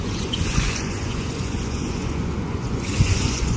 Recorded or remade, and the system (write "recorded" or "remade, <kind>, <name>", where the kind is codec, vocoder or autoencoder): remade, vocoder, Vocos